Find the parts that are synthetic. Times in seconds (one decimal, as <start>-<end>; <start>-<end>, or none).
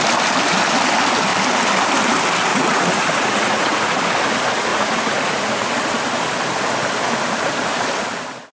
2.5-4.0; 4.7-5.7